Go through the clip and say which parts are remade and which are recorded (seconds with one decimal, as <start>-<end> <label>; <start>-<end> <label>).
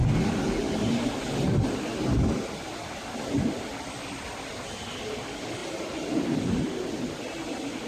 0.0-5.6 recorded; 5.6-6.6 remade; 6.6-7.9 recorded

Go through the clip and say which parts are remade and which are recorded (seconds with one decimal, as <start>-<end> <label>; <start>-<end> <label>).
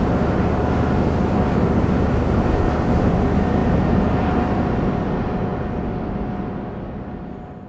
0.0-7.7 recorded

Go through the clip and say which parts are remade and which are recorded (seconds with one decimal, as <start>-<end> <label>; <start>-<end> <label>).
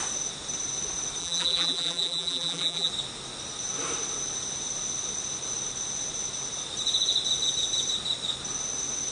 0.0-1.2 recorded; 1.2-2.9 remade; 2.9-9.1 recorded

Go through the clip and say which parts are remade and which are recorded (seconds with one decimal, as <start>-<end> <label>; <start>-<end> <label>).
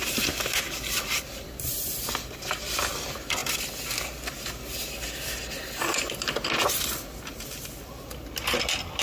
0.0-9.0 recorded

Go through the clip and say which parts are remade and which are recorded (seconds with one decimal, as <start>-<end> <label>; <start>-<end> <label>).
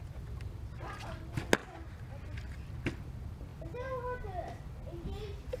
0.0-5.6 recorded